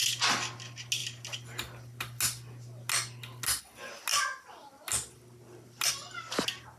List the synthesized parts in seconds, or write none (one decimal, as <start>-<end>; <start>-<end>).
none

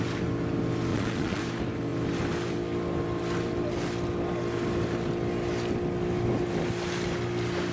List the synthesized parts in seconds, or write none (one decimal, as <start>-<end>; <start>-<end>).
0.9-1.4